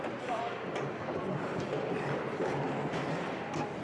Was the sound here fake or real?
real